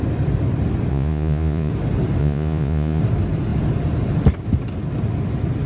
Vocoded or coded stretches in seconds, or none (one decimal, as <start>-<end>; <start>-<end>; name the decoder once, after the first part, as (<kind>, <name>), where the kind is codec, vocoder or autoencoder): 0.9-1.7 (vocoder, Vocos); 2.2-3.0